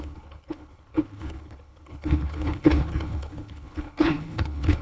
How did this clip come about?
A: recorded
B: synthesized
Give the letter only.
B